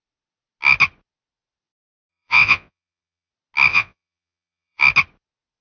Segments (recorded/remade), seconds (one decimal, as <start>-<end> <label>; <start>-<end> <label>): 0.0-2.1 recorded; 2.1-3.3 remade; 3.3-3.7 recorded; 3.7-4.8 remade; 4.8-5.6 recorded